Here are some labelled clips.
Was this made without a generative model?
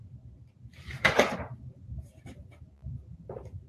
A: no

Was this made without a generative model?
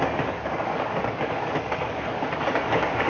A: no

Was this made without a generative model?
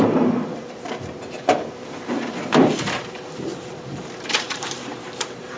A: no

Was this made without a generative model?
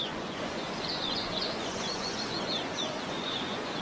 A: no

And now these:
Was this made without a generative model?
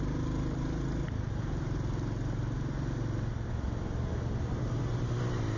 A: yes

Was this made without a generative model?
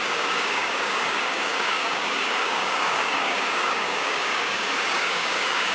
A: no